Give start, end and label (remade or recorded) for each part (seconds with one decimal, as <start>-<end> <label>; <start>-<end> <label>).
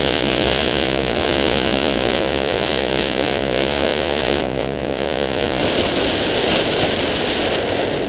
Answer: 0.0-5.6 remade; 5.6-8.1 recorded